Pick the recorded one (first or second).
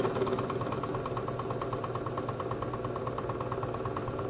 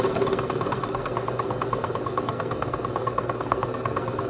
first